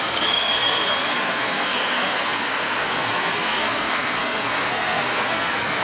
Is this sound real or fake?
fake